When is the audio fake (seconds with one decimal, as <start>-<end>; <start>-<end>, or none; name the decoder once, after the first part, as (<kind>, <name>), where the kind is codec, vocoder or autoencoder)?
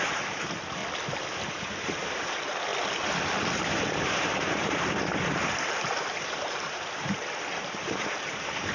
0.0-0.8 (vocoder, BigVGAN v2); 1.5-2.7; 3.5-8.7